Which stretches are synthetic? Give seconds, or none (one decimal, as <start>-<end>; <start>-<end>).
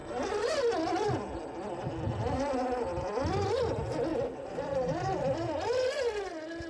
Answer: 4.1-5.5